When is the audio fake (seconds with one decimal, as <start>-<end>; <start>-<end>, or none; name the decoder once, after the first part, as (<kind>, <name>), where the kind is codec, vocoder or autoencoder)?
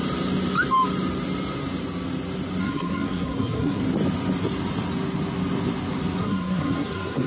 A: 2.6-3.8 (codec, SNAC); 6.2-7.3